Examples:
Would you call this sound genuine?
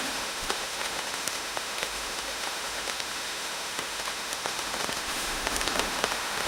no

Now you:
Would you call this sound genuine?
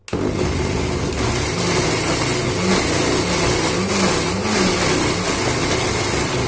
yes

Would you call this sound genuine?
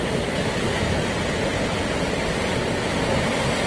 yes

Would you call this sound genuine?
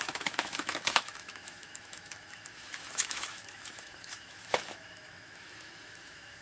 no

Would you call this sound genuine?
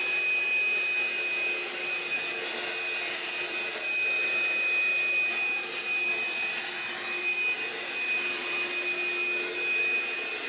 yes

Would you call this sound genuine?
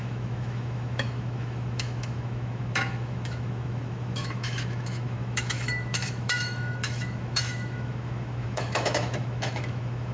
no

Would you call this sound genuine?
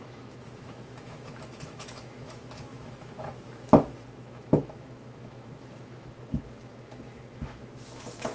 no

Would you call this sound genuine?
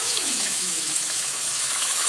no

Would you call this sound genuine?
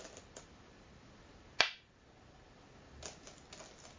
yes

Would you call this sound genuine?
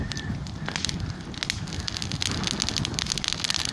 yes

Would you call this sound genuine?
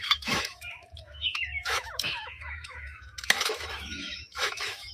no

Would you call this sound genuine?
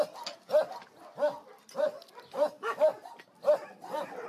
yes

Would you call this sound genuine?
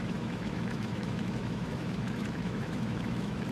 no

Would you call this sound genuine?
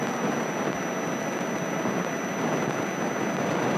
yes